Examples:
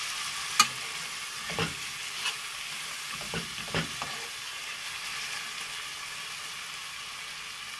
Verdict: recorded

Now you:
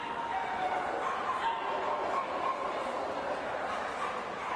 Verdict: recorded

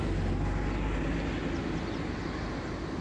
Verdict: recorded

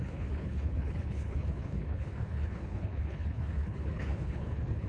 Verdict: remade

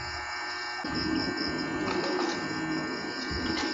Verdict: recorded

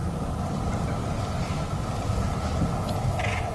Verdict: recorded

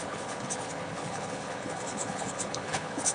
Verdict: remade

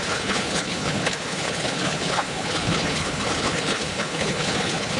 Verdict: remade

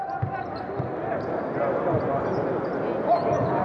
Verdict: recorded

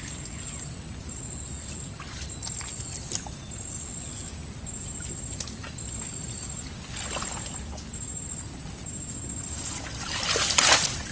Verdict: recorded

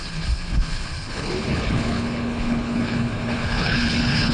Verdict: remade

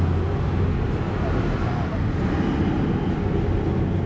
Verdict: recorded